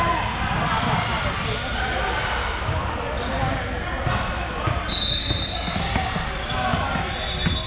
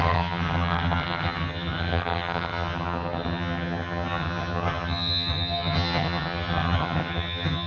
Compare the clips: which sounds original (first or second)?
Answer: first